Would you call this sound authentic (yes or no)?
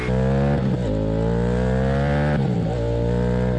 yes